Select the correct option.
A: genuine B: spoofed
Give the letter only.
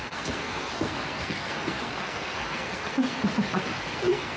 B